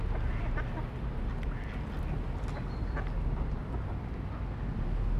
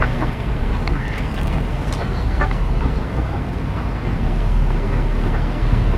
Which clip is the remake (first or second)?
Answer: second